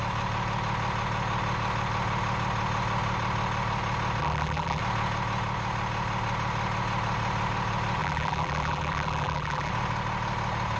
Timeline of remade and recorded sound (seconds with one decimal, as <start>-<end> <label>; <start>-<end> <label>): 0.0-4.2 recorded; 4.2-4.8 remade; 4.8-8.0 recorded; 8.0-9.7 remade; 9.7-10.8 recorded